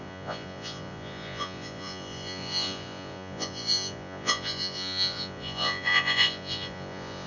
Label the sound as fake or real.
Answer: fake